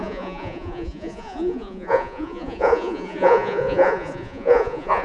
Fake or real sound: fake